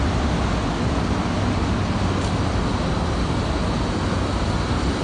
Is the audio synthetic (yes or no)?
no